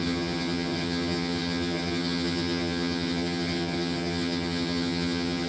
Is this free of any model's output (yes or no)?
no